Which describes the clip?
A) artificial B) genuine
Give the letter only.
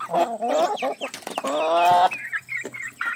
B